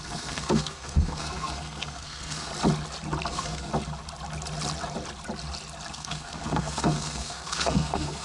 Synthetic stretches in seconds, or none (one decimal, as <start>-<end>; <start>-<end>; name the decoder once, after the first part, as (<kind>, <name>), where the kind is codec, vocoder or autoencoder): 0.0-2.5 (codec, SNAC); 3.3-3.7; 5.9-8.2

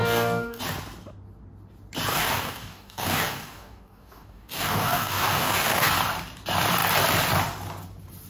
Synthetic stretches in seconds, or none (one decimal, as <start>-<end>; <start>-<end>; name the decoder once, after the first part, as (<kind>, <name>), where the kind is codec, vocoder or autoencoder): 0.0-0.6 (codec, DAC); 2.1-5.9

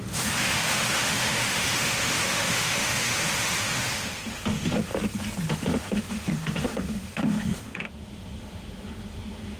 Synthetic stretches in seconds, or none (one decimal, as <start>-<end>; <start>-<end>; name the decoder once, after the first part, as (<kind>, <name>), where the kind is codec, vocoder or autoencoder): 0.0-4.9 (autoencoder, DAC-VAE); 5.5-9.6

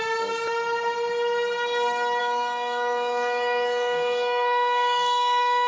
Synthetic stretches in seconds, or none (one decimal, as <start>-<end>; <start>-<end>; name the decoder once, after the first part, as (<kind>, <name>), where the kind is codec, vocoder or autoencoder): 2.2-5.7 (codec, DAC)

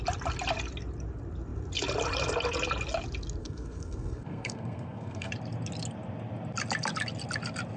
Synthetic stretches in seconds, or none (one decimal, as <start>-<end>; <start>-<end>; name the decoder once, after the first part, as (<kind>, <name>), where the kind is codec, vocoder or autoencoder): 3.4-5.3 (codec, SNAC)

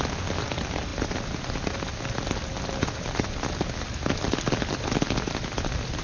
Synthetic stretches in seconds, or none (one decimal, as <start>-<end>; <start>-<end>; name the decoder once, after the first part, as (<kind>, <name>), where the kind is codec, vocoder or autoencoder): none

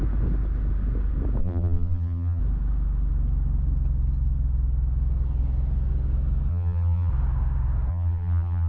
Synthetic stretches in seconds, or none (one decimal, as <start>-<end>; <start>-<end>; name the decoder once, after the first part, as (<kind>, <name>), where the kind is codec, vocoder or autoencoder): 1.4-2.4 (vocoder, BigVGAN v2); 6.5-7.1; 7.9-8.7

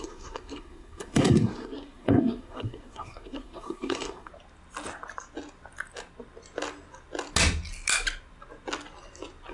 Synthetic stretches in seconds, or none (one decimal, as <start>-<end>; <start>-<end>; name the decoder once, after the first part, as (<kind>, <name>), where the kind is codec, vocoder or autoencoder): 0.0-4.3 (codec, SNAC)